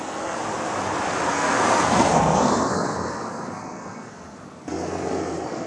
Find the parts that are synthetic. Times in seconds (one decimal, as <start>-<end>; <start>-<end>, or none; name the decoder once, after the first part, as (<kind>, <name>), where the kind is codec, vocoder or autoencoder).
0.0-0.4 (codec, SNAC); 1.3-5.7